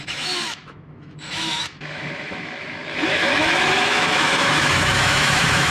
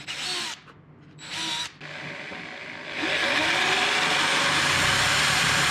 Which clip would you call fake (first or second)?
first